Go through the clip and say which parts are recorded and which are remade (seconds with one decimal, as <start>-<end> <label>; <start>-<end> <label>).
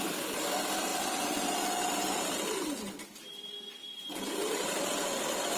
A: 0.0-0.9 recorded; 0.9-4.3 remade; 4.3-5.6 recorded